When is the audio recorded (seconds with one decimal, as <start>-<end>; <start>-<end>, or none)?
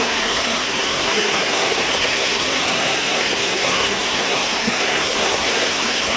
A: none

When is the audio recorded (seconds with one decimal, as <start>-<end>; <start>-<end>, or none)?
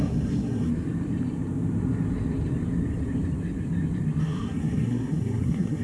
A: 0.7-4.2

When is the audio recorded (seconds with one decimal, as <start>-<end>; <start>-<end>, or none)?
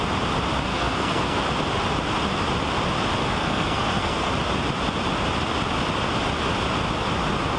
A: 0.0-0.7; 1.4-3.2; 4.3-7.6